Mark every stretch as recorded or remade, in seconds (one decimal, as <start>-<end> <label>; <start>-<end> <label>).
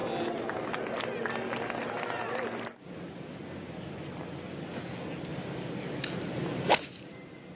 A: 0.0-7.6 recorded